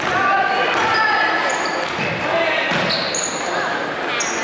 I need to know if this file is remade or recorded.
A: recorded